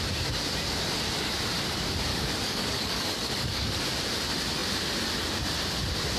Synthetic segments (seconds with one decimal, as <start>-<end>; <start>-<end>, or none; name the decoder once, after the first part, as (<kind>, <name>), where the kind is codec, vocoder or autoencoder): 2.1-3.8 (codec, DAC)